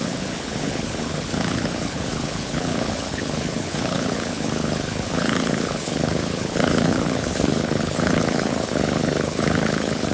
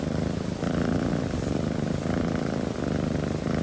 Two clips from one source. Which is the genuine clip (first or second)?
second